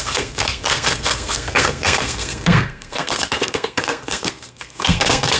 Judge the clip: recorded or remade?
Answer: remade